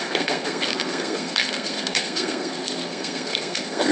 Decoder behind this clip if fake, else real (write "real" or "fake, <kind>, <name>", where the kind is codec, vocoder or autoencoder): fake, codec, SNAC